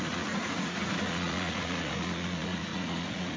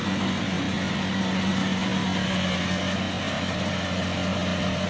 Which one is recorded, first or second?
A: second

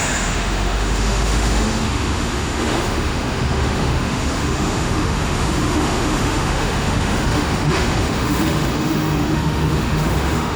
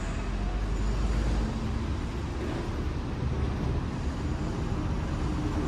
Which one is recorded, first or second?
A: second